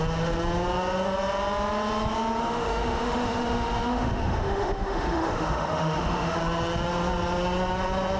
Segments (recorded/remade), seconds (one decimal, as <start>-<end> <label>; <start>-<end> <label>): 0.0-2.4 recorded; 2.4-6.4 remade; 6.4-8.2 recorded